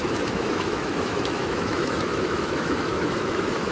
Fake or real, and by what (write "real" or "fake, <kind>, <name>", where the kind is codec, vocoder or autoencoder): fake, autoencoder, DAC-VAE